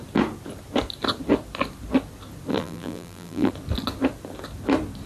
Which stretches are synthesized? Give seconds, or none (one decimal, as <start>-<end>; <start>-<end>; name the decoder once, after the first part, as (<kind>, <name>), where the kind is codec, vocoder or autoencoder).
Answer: 2.5-3.5 (vocoder, BigVGAN v2)